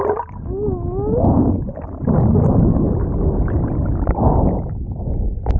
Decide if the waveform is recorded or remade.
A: recorded